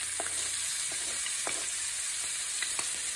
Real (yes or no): yes